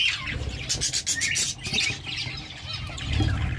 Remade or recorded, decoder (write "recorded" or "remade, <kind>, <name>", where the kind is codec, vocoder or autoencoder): recorded